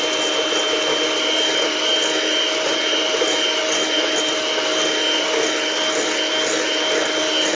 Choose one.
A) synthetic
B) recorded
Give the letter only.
B